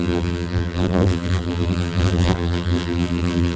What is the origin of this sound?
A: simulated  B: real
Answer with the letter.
A